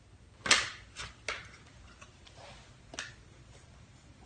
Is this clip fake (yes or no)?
no